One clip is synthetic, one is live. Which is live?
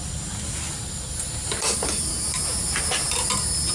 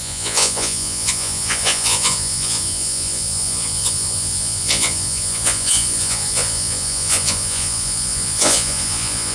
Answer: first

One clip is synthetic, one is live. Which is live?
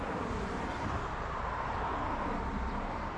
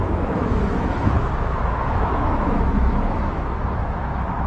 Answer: first